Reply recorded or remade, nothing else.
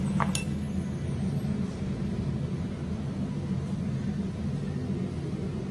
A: recorded